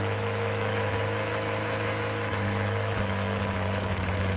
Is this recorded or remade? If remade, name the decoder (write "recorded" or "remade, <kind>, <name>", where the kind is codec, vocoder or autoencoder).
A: remade, autoencoder, DAC-VAE